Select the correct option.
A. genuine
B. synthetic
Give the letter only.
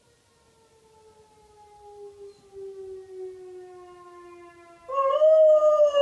A